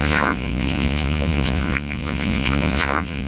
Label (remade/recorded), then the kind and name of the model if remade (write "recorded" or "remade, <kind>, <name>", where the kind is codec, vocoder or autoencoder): remade, vocoder, Vocos